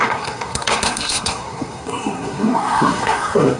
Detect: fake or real fake